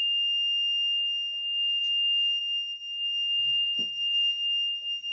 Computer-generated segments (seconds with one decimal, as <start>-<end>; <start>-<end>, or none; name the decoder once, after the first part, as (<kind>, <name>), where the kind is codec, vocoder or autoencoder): 3.4-4.3 (codec, SNAC)